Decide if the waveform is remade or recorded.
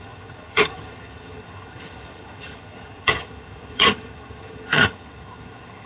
remade